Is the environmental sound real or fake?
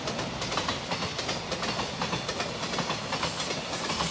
real